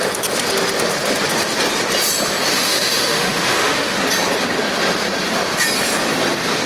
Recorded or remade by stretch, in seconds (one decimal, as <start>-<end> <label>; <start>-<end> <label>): 0.0-2.5 recorded; 2.5-4.0 remade; 4.0-6.7 recorded